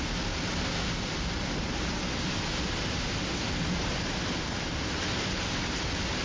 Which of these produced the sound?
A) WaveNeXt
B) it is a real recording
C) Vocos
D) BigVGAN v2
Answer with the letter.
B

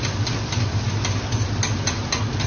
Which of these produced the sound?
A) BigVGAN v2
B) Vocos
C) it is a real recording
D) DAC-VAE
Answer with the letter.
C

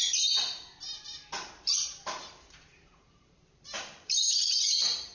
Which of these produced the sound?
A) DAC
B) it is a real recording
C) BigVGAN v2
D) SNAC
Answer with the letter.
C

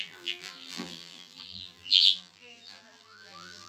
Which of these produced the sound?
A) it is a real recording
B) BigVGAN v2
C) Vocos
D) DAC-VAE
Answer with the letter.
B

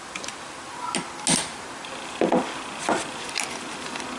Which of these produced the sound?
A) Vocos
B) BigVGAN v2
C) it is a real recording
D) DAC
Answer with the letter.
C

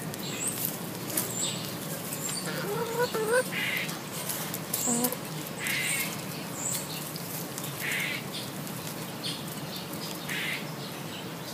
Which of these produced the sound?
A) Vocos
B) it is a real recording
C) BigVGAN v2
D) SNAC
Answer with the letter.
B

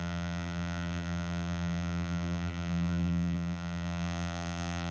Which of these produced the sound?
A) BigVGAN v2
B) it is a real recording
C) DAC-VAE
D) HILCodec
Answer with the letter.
A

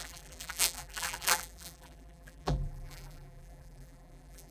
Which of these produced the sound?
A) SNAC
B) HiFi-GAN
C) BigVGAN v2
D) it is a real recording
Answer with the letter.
C